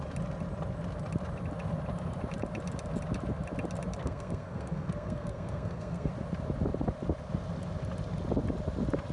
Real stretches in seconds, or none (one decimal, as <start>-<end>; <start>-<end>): 0.0-4.0; 6.1-9.1